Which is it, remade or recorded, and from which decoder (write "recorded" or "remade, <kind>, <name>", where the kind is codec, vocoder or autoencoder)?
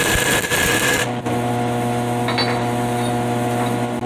recorded